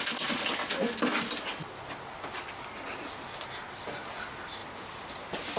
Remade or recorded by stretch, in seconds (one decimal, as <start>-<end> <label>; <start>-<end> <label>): 0.0-5.6 recorded